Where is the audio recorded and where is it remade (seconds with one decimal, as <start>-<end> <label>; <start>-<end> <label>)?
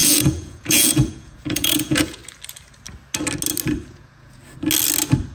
0.0-2.2 remade; 2.2-3.9 recorded; 3.9-4.4 remade; 4.4-5.3 recorded